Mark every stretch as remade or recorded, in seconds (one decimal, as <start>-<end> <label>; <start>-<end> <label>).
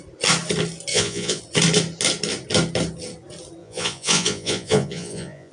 0.0-0.9 recorded; 0.9-1.4 remade; 1.4-3.6 recorded; 3.6-5.5 remade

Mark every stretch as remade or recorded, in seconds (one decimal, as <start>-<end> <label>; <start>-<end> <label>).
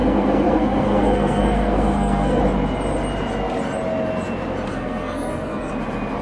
0.0-2.4 remade; 2.4-4.7 recorded; 4.7-5.7 remade; 5.7-6.2 recorded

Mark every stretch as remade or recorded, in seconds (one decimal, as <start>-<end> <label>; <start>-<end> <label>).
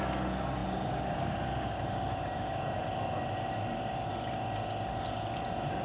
0.0-0.6 recorded; 0.6-4.1 remade; 4.1-5.8 recorded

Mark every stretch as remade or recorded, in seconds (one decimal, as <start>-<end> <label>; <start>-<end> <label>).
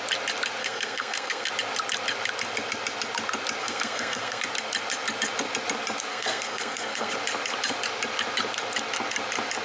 0.0-0.6 recorded; 0.6-1.5 remade; 1.5-3.6 recorded; 3.6-4.4 remade; 4.4-6.1 recorded; 6.1-7.1 remade; 7.1-9.6 recorded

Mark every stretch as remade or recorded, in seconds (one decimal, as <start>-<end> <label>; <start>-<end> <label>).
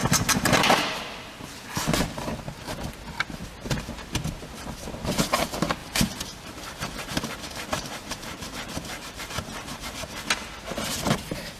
0.0-1.0 remade; 1.0-5.8 recorded; 5.8-10.3 remade; 10.3-11.6 recorded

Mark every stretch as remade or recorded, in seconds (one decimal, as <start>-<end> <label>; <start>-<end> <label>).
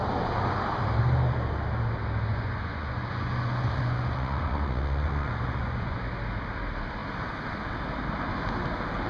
0.0-2.3 recorded; 2.3-6.0 remade; 6.0-9.1 recorded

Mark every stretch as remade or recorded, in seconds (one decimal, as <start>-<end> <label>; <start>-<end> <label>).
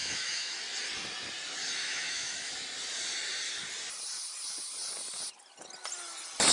0.0-0.6 remade; 0.6-1.8 recorded; 1.8-2.5 remade; 2.5-6.5 recorded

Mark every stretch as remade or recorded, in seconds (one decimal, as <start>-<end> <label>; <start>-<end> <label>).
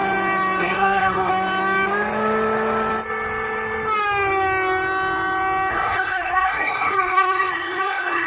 0.0-0.6 recorded; 0.6-1.3 remade; 1.3-5.7 recorded; 5.7-8.3 remade